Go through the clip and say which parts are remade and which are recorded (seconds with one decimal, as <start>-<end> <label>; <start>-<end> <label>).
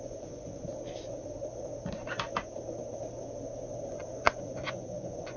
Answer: 0.0-0.7 remade; 0.7-3.9 recorded; 3.9-5.4 remade